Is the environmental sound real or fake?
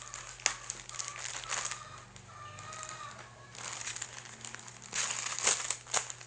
real